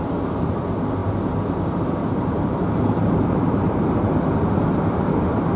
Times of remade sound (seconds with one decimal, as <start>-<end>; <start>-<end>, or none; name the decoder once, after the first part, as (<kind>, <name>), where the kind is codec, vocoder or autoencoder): none